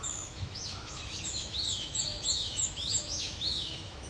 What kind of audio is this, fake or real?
fake